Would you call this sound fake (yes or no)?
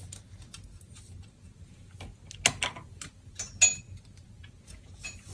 no